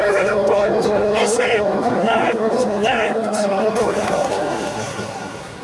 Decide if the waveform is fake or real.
fake